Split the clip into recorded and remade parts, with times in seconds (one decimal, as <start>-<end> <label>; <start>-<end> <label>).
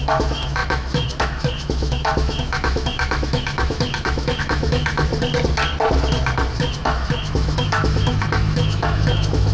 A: 0.0-5.1 remade; 5.1-6.5 recorded; 6.5-9.5 remade